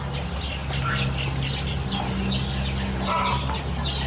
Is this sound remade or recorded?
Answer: recorded